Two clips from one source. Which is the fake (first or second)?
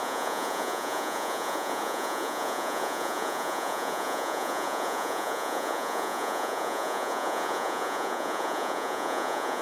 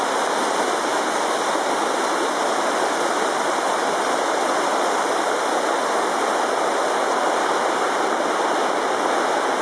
first